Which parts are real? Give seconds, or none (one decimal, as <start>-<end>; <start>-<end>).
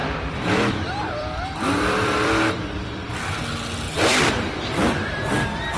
3.5-3.9; 4.6-5.8